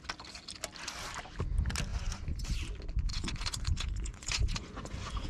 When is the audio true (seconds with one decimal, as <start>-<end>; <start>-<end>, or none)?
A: 0.0-1.9; 2.6-3.1

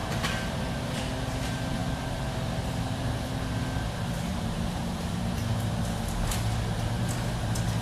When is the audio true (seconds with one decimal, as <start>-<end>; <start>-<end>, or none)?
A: 0.0-4.3; 5.8-7.8

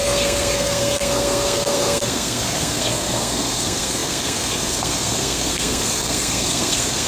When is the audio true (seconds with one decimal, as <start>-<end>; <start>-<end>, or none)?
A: none

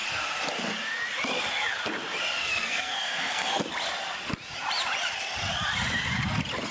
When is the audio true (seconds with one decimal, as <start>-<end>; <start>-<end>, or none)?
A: 0.0-2.4; 3.6-6.7

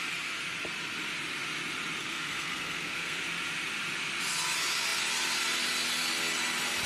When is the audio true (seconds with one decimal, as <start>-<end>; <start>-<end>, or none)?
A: 0.0-2.0; 3.2-6.9

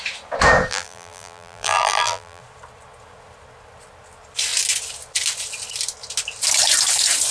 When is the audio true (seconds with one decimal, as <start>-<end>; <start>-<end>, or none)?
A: 0.0-0.7; 2.4-7.3

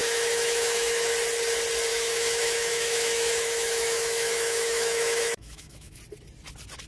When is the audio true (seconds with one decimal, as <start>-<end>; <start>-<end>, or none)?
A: 1.1-1.9; 6.0-6.9

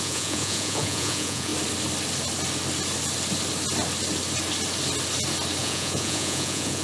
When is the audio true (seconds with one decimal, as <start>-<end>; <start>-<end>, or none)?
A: 1.5-5.6